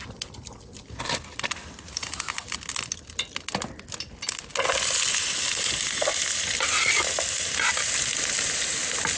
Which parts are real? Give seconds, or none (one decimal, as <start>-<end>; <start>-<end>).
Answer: 0.0-9.2

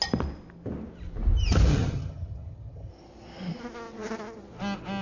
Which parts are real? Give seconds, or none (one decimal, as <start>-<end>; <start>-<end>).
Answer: 0.0-1.7; 2.9-5.0

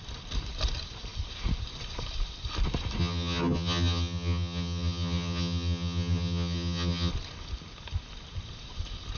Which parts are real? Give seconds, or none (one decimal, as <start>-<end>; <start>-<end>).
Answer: 0.0-3.0; 7.1-9.2

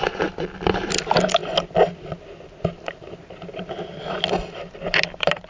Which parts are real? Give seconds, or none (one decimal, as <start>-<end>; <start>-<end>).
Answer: 0.0-5.5

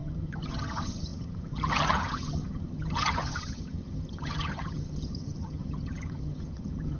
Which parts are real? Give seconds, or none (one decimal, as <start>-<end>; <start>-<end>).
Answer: none

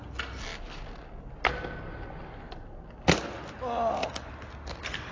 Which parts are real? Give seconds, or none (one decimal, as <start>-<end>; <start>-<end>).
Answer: 0.0-5.1

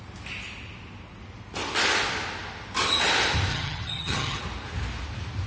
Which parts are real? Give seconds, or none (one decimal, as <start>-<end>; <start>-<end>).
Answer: 0.0-3.5; 4.4-5.5

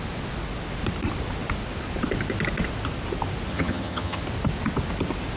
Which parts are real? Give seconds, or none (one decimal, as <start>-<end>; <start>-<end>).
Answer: 0.0-3.5; 4.2-5.4